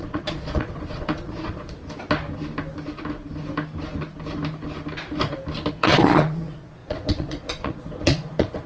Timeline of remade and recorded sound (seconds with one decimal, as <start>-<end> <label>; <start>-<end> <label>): 0.0-1.8 remade; 1.8-5.7 recorded; 5.7-8.7 remade